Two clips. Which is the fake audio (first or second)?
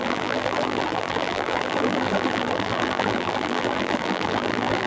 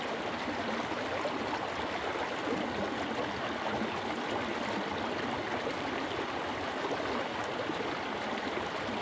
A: first